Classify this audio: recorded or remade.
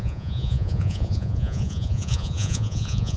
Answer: remade